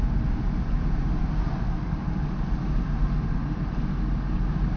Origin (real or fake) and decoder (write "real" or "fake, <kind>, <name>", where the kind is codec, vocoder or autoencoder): real